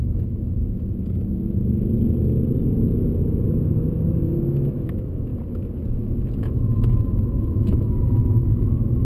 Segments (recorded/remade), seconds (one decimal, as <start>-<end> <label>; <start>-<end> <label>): 0.0-0.6 remade; 0.6-4.2 recorded; 4.2-5.3 remade; 5.3-6.4 recorded; 6.4-9.0 remade